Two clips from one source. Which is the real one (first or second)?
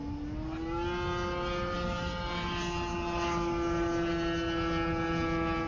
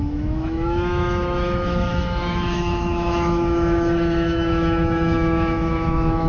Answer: first